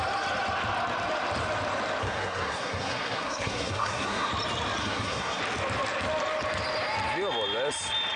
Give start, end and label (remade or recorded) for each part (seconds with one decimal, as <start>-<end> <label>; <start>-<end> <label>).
0.0-2.0 recorded; 2.0-4.3 remade; 4.3-4.8 recorded; 4.8-5.4 remade; 5.4-8.2 recorded